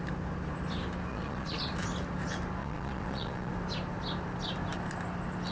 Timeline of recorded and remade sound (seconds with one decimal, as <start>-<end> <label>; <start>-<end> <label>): 0.0-1.1 recorded; 1.1-1.6 remade; 1.6-2.6 recorded; 2.6-3.5 remade; 3.5-5.5 recorded

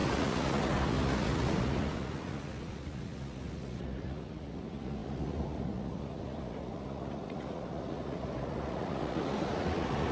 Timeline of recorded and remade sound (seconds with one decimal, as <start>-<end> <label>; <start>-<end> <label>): 0.0-10.1 remade

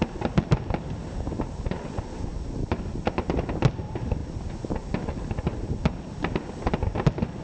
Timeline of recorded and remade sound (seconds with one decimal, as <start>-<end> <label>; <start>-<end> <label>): 0.0-7.4 recorded

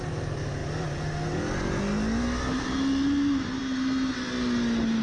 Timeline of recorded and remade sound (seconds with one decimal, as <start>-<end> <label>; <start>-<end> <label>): 0.0-5.0 recorded

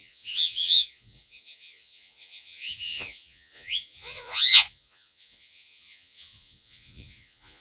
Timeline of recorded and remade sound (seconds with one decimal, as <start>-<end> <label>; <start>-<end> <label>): 0.0-7.6 remade

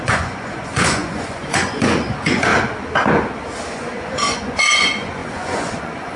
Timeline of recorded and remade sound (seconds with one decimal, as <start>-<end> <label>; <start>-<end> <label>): 0.0-2.5 remade; 2.5-3.7 recorded; 3.7-6.2 remade

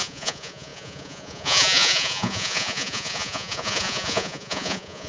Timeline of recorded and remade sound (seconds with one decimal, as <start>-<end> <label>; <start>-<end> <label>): 0.0-5.1 remade

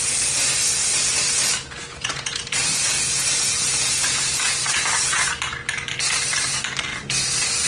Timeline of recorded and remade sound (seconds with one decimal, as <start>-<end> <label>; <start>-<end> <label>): 0.0-1.9 recorded; 1.9-5.4 remade; 5.4-7.7 recorded